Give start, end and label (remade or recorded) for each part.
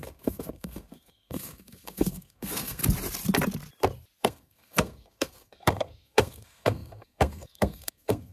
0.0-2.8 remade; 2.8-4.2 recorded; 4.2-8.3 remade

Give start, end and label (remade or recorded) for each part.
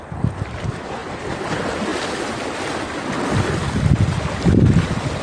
0.0-5.2 recorded